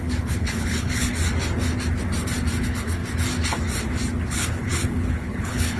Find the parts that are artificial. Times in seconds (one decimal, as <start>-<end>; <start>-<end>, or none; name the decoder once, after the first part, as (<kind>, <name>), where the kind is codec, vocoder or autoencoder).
0.0-1.1 (codec, HILCodec); 2.6-3.0; 4.3-5.8